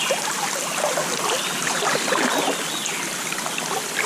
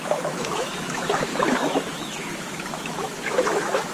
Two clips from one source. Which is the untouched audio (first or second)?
first